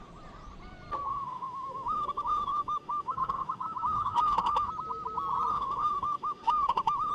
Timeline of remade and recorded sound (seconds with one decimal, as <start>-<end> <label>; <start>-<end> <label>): 0.0-1.1 recorded; 1.1-4.7 remade; 4.7-5.5 recorded; 5.5-7.1 remade